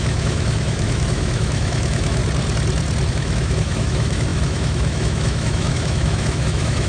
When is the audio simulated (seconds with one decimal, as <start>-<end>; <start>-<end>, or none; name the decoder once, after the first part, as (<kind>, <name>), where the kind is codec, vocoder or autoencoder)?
0.0-2.2 (autoencoder, DAC-VAE); 3.1-6.9